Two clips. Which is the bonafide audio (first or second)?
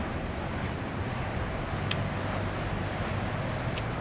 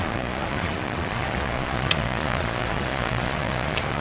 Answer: first